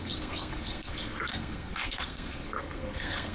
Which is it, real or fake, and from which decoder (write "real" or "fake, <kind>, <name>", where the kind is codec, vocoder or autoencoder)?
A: fake, codec, SNAC